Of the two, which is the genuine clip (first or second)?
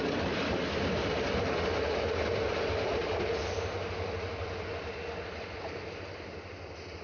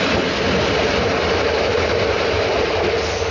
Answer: first